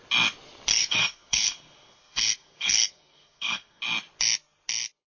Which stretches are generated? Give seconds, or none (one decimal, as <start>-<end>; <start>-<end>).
0.7-3.8